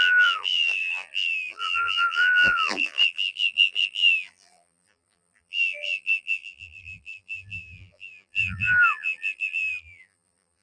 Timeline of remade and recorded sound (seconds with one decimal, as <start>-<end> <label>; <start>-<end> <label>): 0.0-10.6 remade